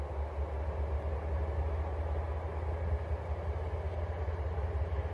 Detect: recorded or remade recorded